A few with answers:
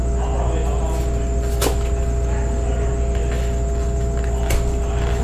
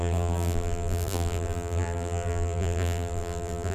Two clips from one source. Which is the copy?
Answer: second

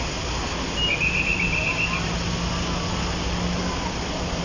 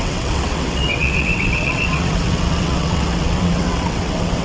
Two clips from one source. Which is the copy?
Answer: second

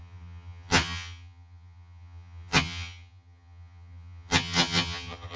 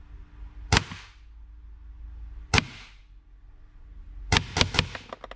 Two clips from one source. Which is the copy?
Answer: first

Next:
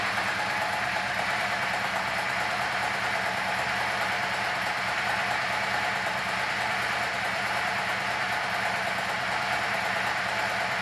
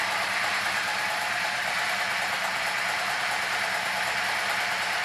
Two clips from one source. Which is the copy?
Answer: second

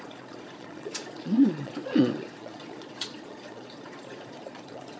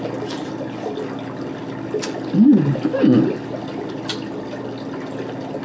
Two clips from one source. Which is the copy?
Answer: first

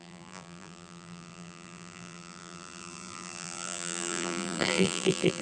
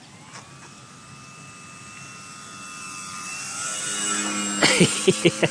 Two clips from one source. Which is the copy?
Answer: first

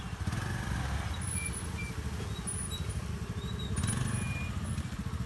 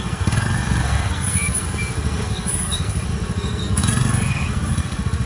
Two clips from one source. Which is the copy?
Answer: second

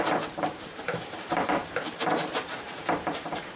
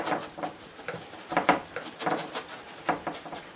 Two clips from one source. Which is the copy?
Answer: first